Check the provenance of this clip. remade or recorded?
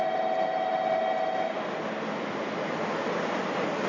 recorded